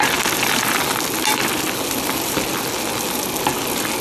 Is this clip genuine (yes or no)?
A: yes